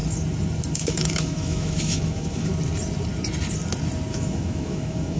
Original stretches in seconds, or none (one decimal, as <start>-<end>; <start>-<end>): 0.0-0.7; 2.5-4.1